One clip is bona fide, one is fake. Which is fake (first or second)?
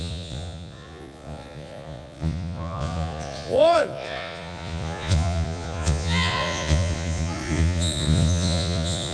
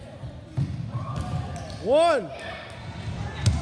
first